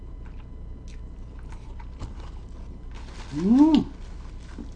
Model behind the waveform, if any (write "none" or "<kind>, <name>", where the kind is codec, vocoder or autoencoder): none